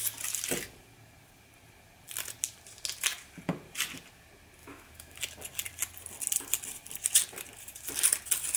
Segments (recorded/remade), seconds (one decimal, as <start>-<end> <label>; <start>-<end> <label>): 0.0-4.6 recorded; 4.6-5.2 remade; 5.2-8.6 recorded